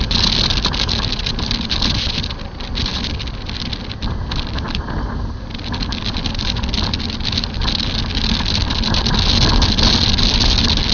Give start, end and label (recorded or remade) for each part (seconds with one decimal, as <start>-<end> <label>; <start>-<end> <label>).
0.0-10.9 recorded